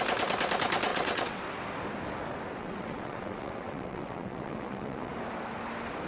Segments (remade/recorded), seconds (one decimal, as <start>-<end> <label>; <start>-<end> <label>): 0.0-0.9 recorded; 0.9-1.4 remade; 1.4-2.6 recorded; 2.6-5.1 remade; 5.1-6.1 recorded